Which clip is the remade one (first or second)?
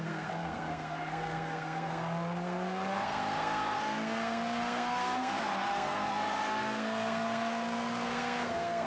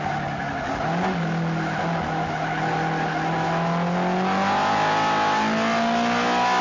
first